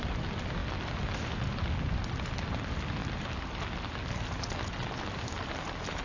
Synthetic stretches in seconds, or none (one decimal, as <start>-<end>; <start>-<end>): none

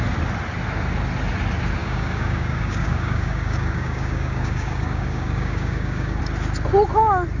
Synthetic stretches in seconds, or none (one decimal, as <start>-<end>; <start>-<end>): 1.8-6.2